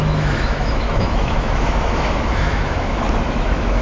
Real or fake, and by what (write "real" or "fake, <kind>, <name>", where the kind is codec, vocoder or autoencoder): fake, autoencoder, DAC-VAE